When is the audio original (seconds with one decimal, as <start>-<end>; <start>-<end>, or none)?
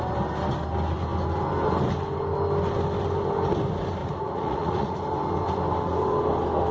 0.0-4.0; 5.0-6.7